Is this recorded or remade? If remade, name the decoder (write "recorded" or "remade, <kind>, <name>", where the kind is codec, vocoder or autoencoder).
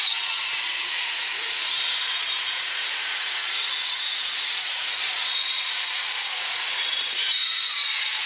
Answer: remade, vocoder, Vocos